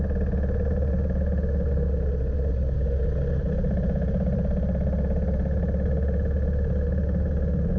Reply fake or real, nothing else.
real